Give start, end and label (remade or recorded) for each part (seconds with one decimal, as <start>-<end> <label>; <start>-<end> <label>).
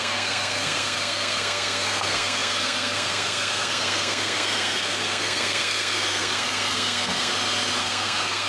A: 0.0-7.3 remade; 7.3-7.8 recorded; 7.8-8.5 remade